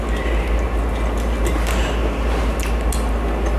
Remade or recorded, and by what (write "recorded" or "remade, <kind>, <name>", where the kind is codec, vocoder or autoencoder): recorded